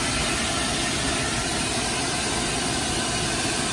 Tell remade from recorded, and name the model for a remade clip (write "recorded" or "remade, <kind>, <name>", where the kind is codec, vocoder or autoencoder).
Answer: recorded